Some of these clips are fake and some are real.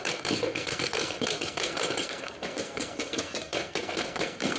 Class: fake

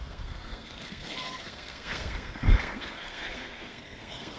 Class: fake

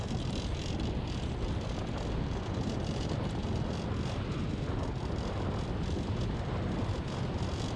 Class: real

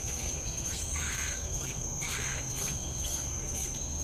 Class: fake